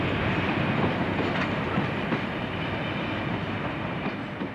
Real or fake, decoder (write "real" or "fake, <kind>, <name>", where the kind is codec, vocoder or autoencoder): real